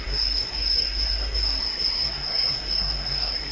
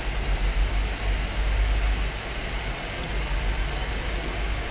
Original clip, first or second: second